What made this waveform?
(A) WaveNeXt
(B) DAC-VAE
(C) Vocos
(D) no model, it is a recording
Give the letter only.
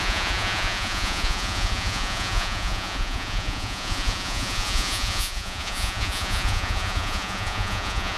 C